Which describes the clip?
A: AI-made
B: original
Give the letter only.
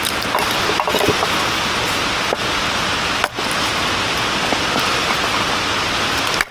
B